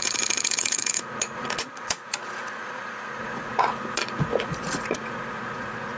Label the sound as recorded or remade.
remade